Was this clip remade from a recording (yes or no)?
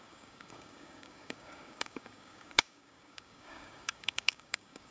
yes